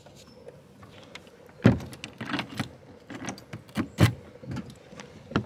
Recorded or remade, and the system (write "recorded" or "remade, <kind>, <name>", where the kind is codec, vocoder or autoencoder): recorded